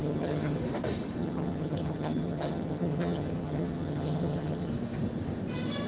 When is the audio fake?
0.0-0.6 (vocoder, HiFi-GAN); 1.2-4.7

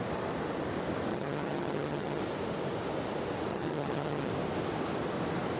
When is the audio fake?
1.1-2.2 (vocoder, HiFi-GAN); 3.5-4.3

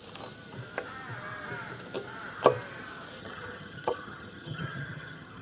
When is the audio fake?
3.2-5.4 (vocoder, HiFi-GAN)

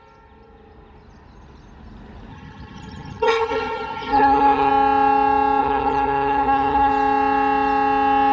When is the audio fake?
2.3-4.7 (vocoder, HiFi-GAN); 5.6-6.9

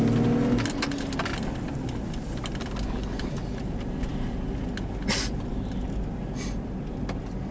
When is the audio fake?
none

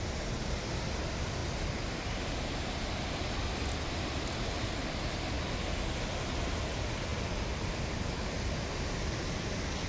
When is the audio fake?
none

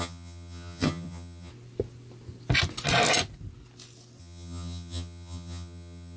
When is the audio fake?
0.0-1.5 (vocoder, HiFi-GAN); 4.2-6.2